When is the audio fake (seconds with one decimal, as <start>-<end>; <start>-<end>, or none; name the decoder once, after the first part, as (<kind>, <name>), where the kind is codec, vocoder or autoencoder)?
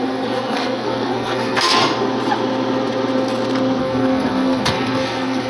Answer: 0.0-1.8 (codec, SNAC); 3.8-5.5